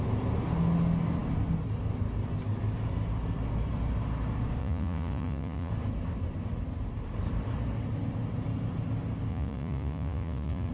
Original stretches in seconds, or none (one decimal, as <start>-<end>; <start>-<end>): 0.0-4.6; 5.7-9.3